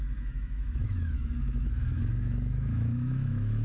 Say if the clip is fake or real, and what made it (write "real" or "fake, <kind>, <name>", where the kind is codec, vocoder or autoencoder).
fake, autoencoder, DAC-VAE